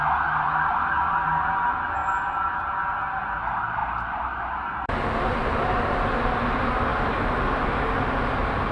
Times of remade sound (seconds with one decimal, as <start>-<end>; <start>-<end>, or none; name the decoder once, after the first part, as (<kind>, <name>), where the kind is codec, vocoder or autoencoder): 3.8-4.9 (vocoder, BigVGAN v2); 5.4-6.1